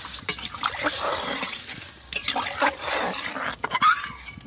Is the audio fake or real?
fake